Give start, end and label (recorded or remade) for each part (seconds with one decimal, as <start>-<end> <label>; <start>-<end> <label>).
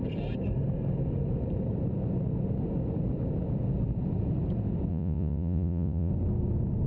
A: 0.0-4.9 recorded; 4.9-6.1 remade; 6.1-6.9 recorded